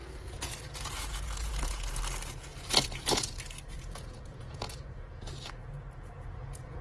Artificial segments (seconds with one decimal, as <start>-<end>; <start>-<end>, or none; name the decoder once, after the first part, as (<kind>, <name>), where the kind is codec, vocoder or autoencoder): 0.0-2.0 (vocoder, Vocos); 2.5-6.8

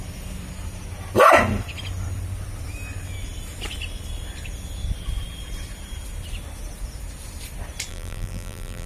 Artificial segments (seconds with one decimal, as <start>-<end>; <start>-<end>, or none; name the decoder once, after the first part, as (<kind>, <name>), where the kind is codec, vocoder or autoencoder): 7.9-8.9 (vocoder, BigVGAN v2)

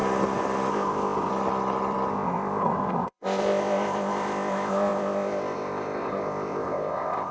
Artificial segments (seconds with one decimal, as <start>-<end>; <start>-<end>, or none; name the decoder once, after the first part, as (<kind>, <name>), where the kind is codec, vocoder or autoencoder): 0.7-1.3 (codec, ZipCodec); 2.1-7.3

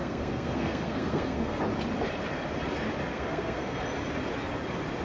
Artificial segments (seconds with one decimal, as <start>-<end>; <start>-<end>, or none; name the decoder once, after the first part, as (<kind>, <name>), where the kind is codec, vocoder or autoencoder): 0.0-1.6 (codec, SNAC); 3.1-3.8